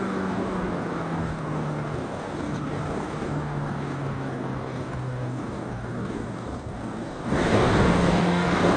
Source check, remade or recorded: remade